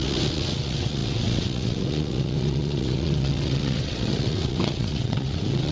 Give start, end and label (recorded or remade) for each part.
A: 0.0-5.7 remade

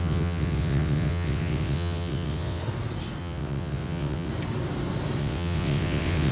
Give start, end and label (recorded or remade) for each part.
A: 0.0-2.6 remade; 2.6-3.2 recorded; 3.2-4.3 remade; 4.3-5.2 recorded; 5.2-6.3 remade

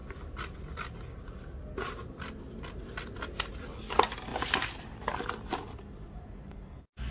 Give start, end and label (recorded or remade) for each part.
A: 0.0-7.1 recorded

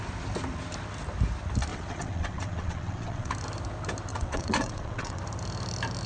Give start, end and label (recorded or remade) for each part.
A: 0.0-1.7 recorded; 1.7-3.3 remade; 3.3-4.1 recorded; 4.1-5.2 remade; 5.2-6.1 recorded

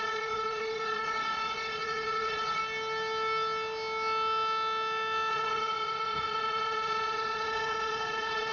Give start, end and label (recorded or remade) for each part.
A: 0.0-2.6 remade; 2.6-5.3 recorded; 5.3-8.5 remade

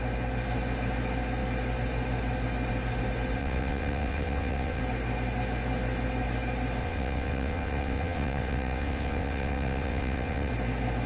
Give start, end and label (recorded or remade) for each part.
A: 0.0-3.4 recorded; 3.4-4.8 remade; 4.8-6.8 recorded; 6.8-10.5 remade; 10.5-11.1 recorded

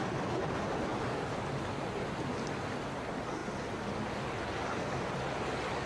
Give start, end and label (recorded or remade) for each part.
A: 0.0-5.9 recorded